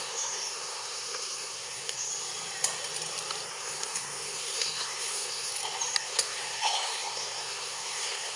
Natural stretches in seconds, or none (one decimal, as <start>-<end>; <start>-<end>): 2.1-3.5; 5.5-6.0